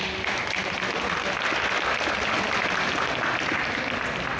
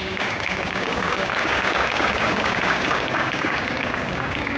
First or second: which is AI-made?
second